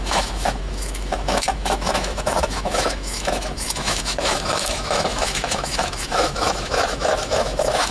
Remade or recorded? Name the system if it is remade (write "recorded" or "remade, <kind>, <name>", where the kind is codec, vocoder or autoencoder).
remade, autoencoder, DAC-VAE